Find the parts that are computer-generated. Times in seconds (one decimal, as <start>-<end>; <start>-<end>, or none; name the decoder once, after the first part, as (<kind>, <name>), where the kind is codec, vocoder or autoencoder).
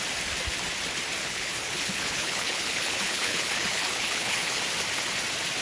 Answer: 1.2-4.6 (codec, HILCodec)